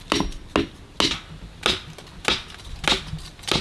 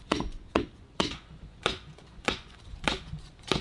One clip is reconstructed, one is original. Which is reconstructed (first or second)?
second